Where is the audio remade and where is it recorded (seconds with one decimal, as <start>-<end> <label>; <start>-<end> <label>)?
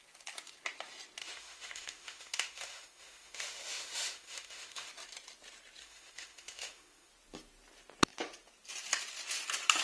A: 0.0-1.2 recorded; 1.2-4.9 remade; 4.9-5.8 recorded; 5.8-7.1 remade; 7.1-9.8 recorded